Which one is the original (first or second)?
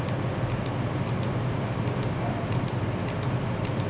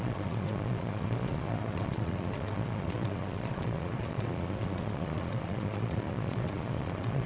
first